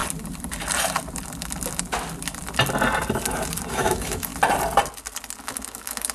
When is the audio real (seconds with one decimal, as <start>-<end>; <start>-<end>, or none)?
0.0-3.7; 4.3-5.4